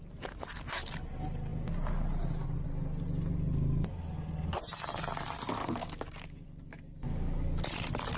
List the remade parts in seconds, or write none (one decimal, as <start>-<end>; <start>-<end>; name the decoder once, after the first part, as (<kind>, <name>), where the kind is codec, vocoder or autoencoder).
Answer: 5.6-7.6 (codec, DAC)